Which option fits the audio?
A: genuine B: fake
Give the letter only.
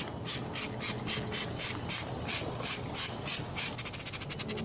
A